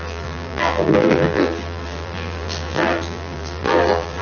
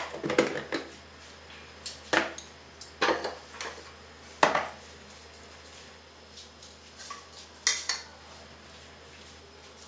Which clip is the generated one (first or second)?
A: first